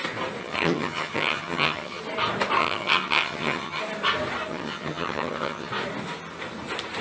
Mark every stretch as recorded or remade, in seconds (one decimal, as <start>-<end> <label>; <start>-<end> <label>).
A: 0.0-0.4 recorded; 0.4-2.0 remade; 2.0-2.6 recorded; 2.6-3.8 remade; 3.8-4.5 recorded; 4.5-5.7 remade; 5.7-7.0 recorded